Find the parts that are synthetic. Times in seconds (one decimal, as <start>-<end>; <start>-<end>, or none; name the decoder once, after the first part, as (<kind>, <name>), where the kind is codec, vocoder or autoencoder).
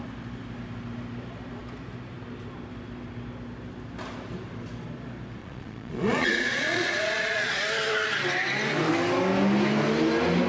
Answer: 5.4-7.6 (vocoder, Vocos)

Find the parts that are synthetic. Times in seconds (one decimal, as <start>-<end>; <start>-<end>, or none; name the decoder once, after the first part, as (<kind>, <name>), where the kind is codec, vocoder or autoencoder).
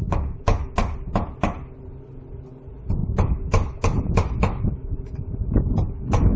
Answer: 0.0-0.7 (autoencoder, DAC-VAE); 3.0-6.4